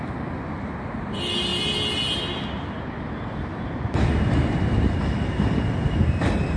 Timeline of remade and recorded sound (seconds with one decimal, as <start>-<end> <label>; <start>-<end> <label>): 0.0-6.6 recorded